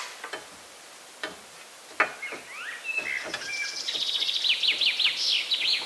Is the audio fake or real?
real